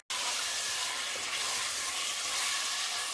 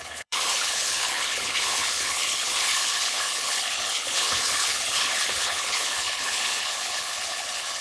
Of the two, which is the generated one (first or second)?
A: second